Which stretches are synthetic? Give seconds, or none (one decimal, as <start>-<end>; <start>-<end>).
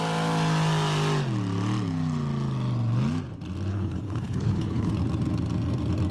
3.7-4.9